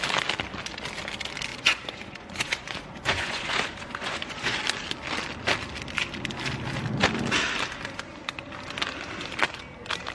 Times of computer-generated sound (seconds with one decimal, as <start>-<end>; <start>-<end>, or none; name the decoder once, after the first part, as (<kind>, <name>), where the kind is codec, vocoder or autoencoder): 1.5-4.6 (vocoder, Vocos)